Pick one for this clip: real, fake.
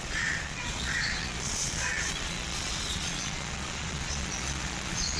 fake